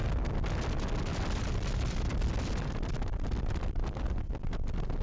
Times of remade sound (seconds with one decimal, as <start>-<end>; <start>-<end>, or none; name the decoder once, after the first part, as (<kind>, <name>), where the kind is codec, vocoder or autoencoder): 1.1-4.1 (vocoder, BigVGAN v2)